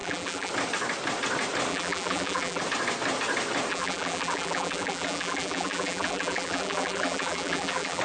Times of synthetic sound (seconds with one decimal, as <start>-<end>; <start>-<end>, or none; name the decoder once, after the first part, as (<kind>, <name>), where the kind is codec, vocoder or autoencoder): 0.0-0.5 (vocoder, BigVGAN v2); 1.7-2.6; 3.7-8.0